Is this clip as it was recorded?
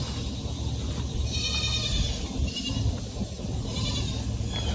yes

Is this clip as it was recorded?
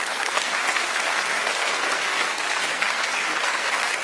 no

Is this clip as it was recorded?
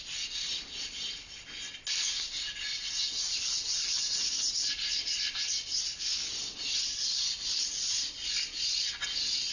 yes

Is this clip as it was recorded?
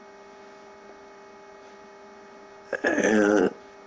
yes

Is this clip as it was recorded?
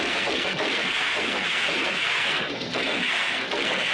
no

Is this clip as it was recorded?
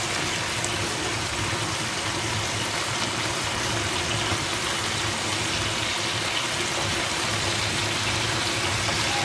yes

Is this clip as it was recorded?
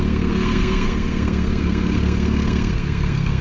no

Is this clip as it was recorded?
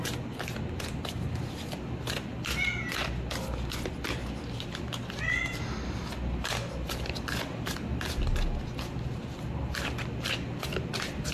yes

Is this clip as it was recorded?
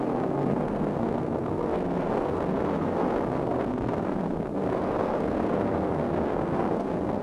no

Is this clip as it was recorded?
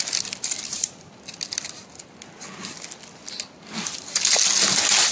yes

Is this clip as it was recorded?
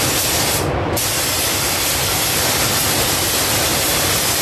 yes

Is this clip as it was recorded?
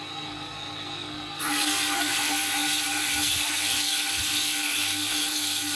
no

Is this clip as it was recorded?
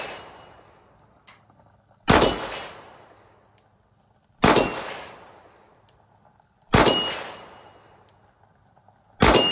yes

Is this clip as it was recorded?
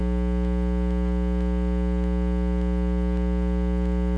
yes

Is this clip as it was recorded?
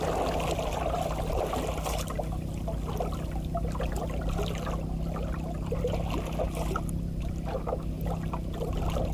yes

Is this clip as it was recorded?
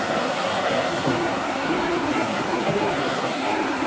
no